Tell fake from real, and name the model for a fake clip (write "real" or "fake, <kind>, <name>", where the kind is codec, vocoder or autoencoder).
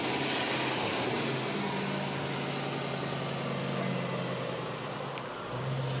real